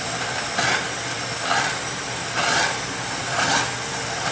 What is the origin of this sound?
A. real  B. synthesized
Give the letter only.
A